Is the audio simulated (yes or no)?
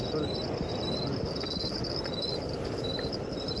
no